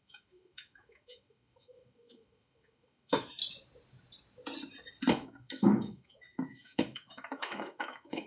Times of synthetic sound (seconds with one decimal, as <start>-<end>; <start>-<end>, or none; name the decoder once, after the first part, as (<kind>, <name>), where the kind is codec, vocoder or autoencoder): 0.0-3.4 (autoencoder, DAC-VAE); 5.1-8.3